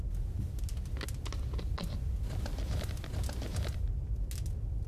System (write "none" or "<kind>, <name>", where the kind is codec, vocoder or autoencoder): none